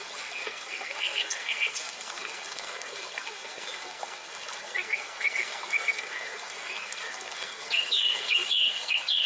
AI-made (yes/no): yes